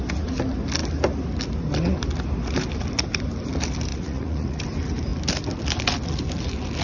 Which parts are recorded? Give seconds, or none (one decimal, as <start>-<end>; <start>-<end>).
0.0-3.9; 4.6-6.8